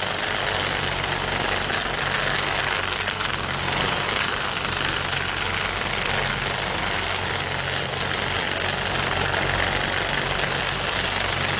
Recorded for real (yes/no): yes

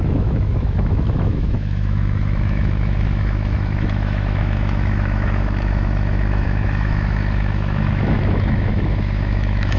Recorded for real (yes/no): no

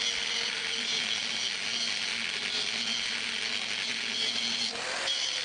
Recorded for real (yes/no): yes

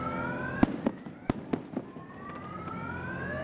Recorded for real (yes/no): yes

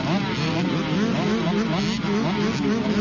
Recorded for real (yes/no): yes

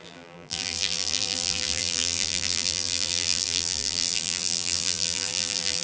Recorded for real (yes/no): no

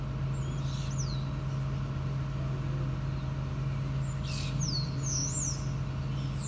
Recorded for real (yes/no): yes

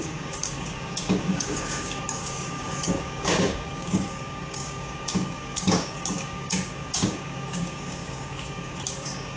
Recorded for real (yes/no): no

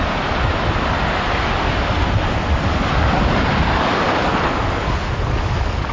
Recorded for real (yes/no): yes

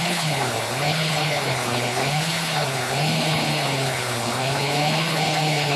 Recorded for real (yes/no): no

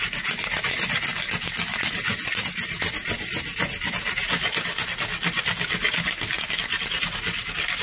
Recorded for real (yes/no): yes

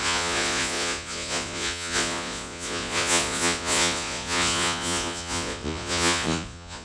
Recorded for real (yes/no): no